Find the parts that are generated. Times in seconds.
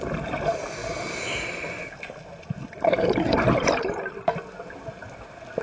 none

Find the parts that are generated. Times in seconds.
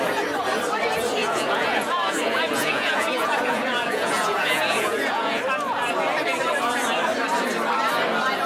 1.2-5.4 (vocoder, Vocos)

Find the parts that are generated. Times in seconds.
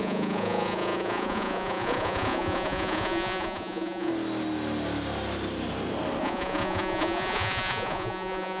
0.0-4.1 (vocoder, Vocos); 6.2-8.6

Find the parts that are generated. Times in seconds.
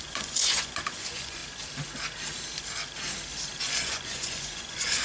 0.0-1.4 (vocoder, Vocos); 3.6-5.0